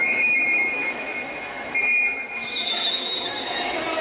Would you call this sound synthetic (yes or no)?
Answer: yes